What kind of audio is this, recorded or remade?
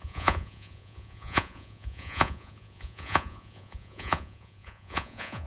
remade